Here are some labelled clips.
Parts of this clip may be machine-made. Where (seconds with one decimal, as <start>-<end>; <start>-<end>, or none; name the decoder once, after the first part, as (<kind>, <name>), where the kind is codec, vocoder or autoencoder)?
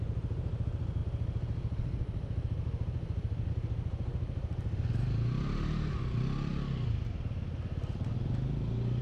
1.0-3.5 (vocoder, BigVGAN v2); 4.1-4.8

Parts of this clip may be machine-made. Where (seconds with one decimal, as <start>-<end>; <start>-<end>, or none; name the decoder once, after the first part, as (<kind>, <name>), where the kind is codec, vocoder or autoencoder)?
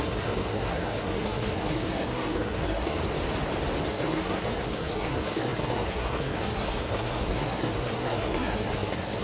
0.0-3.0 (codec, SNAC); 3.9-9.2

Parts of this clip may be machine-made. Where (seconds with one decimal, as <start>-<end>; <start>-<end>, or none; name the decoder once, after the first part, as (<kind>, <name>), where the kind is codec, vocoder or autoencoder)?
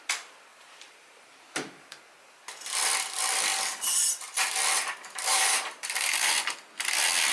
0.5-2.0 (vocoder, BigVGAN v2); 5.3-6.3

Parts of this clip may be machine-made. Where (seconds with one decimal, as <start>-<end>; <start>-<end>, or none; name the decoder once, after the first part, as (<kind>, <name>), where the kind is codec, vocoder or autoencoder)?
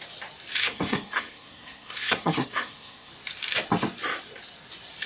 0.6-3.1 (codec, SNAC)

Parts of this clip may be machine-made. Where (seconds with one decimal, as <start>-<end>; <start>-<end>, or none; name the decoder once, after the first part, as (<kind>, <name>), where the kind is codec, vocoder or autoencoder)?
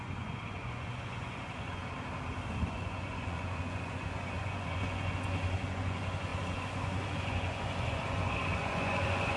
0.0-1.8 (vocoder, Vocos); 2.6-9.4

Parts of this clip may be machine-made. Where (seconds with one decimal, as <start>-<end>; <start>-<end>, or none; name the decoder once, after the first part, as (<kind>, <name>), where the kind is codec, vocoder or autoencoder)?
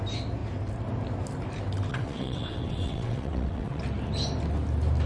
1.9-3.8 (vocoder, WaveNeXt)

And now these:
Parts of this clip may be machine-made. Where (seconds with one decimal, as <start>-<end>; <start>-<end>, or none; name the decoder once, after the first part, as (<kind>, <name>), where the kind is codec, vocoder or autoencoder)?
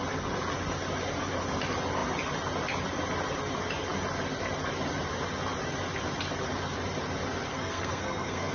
7.5-8.5 (codec, SNAC)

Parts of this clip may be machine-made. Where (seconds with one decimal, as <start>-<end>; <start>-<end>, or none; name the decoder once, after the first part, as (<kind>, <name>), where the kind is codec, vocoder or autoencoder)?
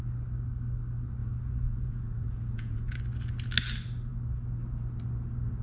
1.2-3.0 (vocoder, Vocos)